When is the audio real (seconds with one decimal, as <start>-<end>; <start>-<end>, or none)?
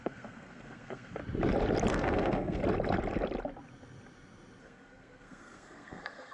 1.2-1.9; 2.6-4.6